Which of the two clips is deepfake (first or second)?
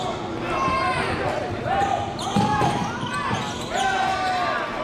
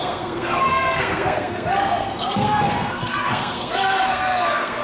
second